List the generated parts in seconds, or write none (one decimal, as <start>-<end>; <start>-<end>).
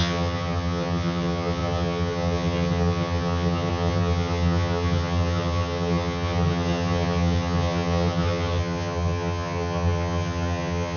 0.0-11.0